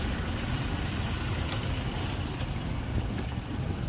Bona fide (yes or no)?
yes